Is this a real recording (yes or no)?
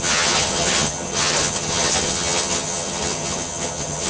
no